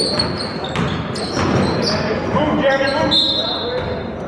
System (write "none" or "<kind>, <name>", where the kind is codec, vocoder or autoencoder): none